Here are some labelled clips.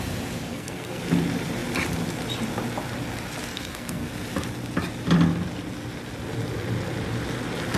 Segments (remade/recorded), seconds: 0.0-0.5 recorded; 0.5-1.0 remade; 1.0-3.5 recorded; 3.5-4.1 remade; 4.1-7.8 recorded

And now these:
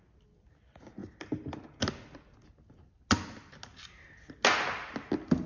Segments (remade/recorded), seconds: 0.0-5.5 recorded

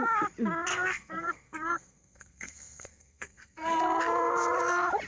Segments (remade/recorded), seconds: 0.0-0.7 recorded; 0.7-3.8 remade; 3.8-5.1 recorded

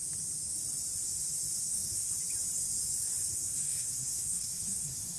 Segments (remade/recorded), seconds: 0.0-1.6 recorded; 1.6-2.1 remade; 2.1-3.3 recorded; 3.3-5.2 remade

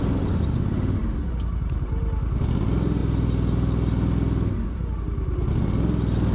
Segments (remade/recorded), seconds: 0.0-6.3 recorded

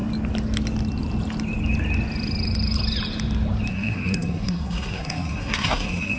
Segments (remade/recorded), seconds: 0.0-3.7 recorded; 3.7-6.2 remade

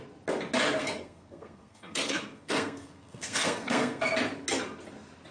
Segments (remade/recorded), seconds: 0.0-0.8 recorded; 0.8-4.0 remade; 4.0-5.3 recorded